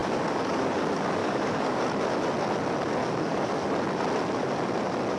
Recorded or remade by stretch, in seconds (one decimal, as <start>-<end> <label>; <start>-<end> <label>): 0.0-0.7 remade; 0.7-1.2 recorded; 1.2-1.8 remade; 1.8-3.0 recorded; 3.0-3.5 remade; 3.5-5.2 recorded